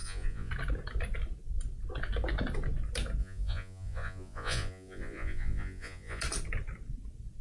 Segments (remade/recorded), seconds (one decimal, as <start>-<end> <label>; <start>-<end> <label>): 0.0-0.5 remade; 0.5-3.2 recorded; 3.2-6.2 remade; 6.2-7.4 recorded